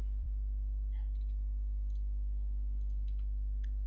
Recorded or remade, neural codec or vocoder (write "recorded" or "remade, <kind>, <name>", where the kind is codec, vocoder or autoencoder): remade, vocoder, BigVGAN v2